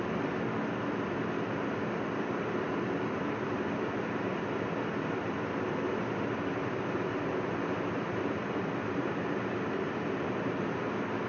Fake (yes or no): yes